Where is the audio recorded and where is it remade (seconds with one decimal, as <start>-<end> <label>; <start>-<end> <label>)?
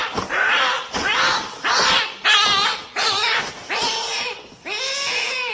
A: 0.0-1.9 remade; 1.9-5.5 recorded